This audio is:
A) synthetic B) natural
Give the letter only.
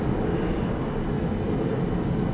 B